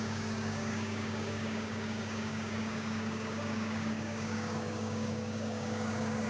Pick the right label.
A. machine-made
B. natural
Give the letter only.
A